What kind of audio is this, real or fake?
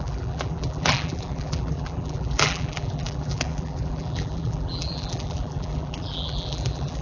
fake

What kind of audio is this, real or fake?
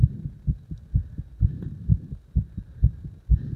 real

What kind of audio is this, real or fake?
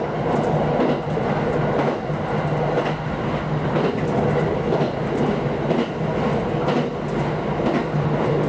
real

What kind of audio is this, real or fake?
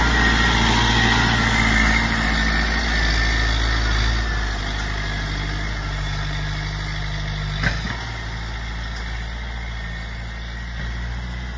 real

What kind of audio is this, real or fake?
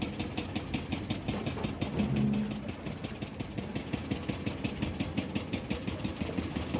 real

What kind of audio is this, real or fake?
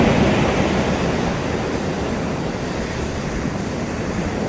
real